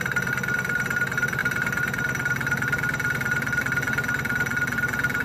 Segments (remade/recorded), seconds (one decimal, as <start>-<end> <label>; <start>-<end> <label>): 0.0-5.2 recorded